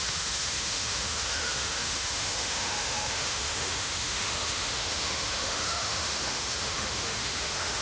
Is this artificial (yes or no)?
yes